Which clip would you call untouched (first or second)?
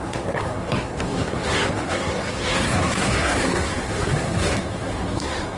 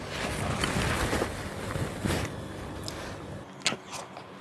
second